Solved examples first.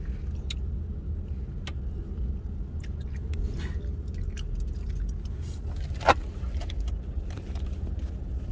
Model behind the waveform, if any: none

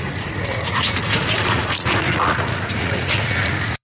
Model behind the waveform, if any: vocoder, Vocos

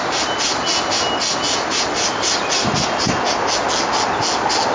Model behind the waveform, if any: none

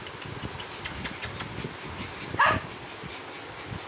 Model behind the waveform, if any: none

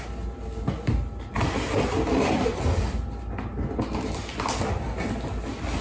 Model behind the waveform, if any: none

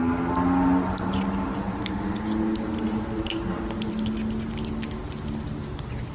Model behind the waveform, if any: none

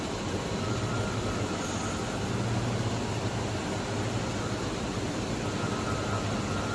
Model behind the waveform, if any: none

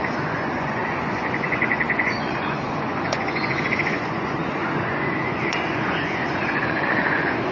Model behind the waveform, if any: vocoder, Vocos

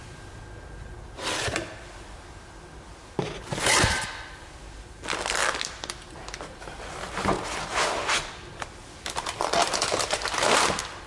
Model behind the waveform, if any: none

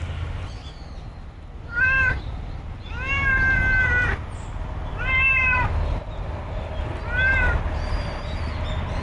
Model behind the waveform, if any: none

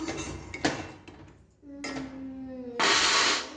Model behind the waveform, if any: none